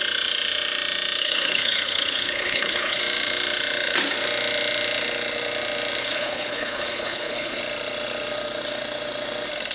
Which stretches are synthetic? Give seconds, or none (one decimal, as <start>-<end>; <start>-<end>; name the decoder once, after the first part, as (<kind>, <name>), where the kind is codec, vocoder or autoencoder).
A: 1.2-3.0 (codec, HILCodec); 6.0-7.6